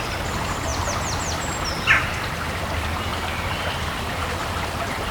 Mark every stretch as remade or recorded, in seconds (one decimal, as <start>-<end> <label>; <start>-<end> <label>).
0.0-0.7 remade; 0.7-2.6 recorded; 2.6-5.1 remade